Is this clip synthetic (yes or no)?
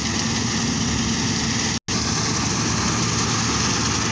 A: no